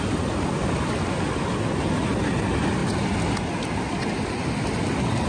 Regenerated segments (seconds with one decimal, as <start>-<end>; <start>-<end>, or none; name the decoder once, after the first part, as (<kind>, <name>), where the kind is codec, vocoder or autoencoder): none